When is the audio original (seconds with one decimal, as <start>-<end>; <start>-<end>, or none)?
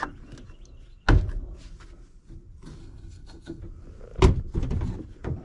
0.0-2.8; 3.6-5.4